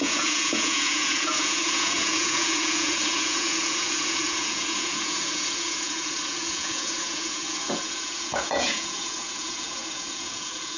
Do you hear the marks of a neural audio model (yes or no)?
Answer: yes